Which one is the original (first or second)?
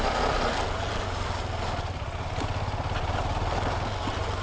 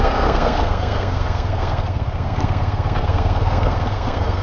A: first